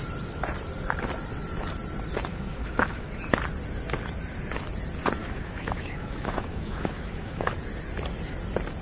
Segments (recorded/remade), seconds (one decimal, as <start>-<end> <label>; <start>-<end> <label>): 0.0-2.3 recorded; 2.3-3.1 remade; 3.1-5.2 recorded; 5.2-7.5 remade; 7.5-8.8 recorded